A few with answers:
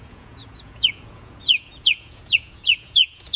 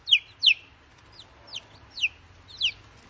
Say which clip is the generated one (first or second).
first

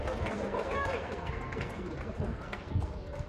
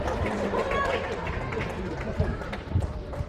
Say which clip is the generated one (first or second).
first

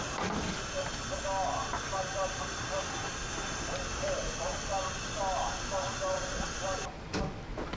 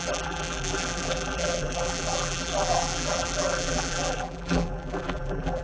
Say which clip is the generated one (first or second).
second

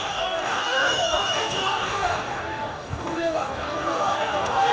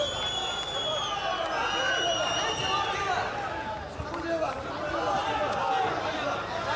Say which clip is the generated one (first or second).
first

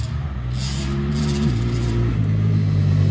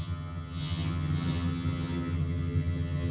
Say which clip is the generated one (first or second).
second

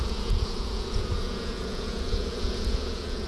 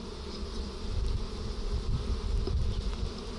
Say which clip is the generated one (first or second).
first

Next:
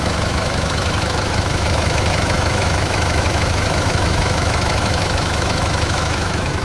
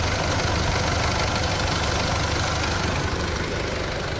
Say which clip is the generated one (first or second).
first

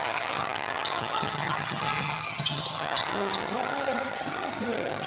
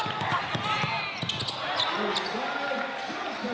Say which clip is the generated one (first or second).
first